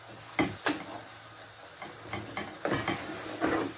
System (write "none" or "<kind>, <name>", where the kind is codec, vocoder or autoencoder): none